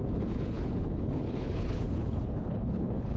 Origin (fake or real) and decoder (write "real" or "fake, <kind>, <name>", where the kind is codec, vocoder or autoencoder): fake, codec, HILCodec